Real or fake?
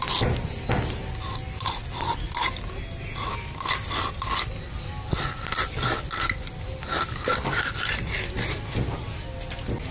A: real